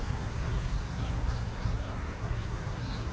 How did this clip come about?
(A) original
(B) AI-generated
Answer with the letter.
B